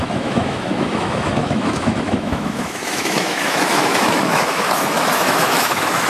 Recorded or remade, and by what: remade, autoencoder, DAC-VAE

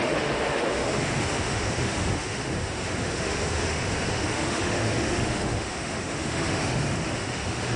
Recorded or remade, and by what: remade, autoencoder, DAC-VAE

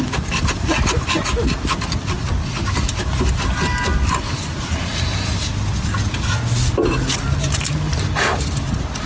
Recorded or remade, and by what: recorded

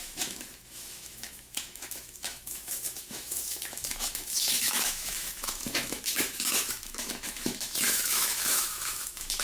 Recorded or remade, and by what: remade, autoencoder, DAC-VAE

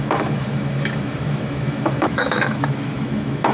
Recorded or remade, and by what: remade, autoencoder, DAC-VAE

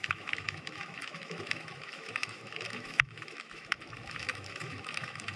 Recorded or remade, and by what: remade, autoencoder, DAC-VAE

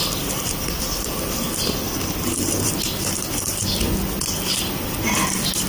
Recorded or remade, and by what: recorded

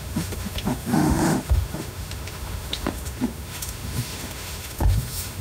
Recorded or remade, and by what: remade, autoencoder, DAC-VAE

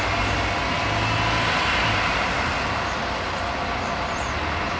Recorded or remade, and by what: recorded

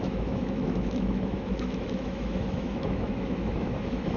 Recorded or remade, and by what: remade, autoencoder, DAC-VAE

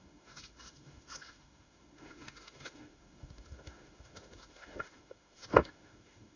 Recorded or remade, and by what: remade, autoencoder, DAC-VAE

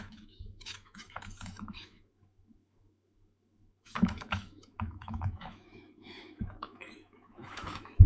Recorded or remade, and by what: remade, autoencoder, DAC-VAE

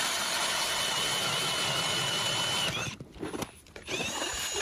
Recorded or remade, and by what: recorded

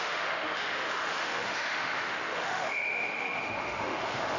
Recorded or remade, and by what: remade, autoencoder, DAC-VAE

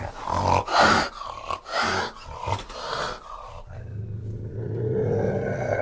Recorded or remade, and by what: recorded